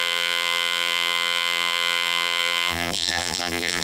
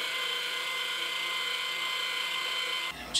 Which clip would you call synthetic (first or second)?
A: first